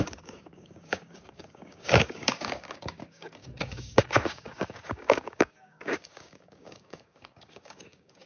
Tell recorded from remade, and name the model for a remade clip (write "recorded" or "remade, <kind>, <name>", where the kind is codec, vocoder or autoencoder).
remade, codec, DAC